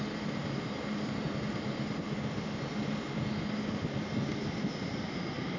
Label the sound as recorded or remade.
recorded